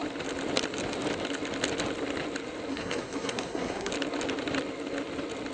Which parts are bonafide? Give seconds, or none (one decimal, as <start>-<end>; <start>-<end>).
0.0-2.7; 3.9-5.5

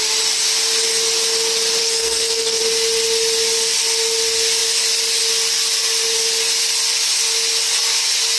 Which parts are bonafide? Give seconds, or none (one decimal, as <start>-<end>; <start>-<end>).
0.0-1.8; 2.6-8.4